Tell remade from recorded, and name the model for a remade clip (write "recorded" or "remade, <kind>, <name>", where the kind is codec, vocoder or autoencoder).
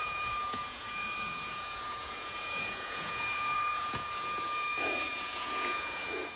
remade, vocoder, Vocos